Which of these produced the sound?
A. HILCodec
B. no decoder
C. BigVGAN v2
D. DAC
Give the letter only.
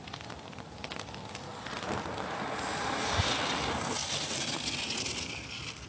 B